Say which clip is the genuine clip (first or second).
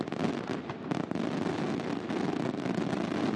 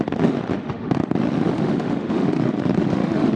first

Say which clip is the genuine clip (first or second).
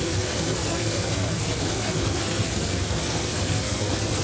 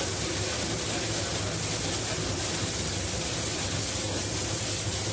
second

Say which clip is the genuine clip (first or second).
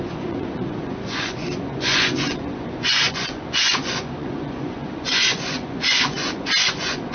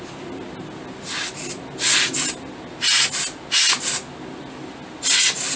second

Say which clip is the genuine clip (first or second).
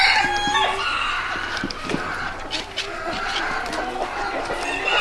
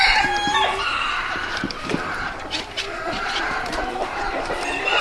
first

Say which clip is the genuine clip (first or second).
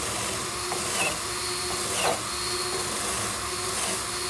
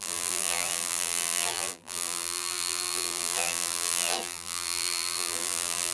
first